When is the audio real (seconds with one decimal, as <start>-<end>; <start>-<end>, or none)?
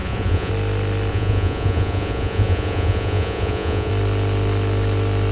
0.5-1.1; 3.9-5.3